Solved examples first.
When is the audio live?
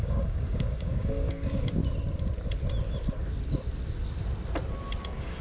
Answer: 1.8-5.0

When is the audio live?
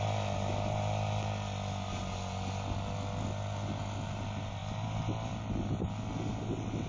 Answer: 0.0-6.9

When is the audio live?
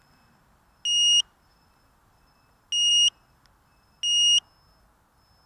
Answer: 0.0-5.5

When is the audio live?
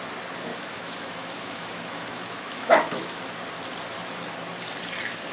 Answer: 0.0-0.5; 3.2-5.3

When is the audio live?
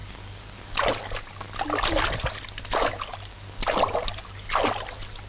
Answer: 0.0-5.3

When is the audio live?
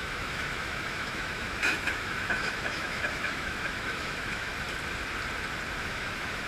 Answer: 4.5-5.8